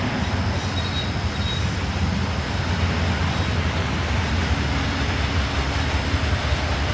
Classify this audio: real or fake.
real